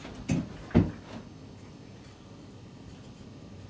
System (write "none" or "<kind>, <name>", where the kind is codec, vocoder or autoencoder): none